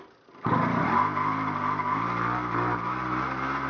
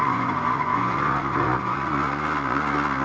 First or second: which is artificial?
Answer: second